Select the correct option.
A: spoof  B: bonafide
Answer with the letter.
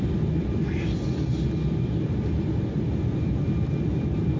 A